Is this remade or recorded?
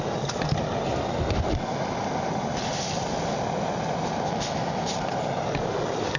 recorded